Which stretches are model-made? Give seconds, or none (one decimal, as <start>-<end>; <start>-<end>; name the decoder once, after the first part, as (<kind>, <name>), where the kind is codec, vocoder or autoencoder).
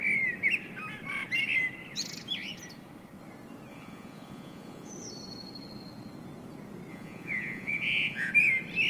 3.7-4.9 (vocoder, Vocos); 6.9-8.3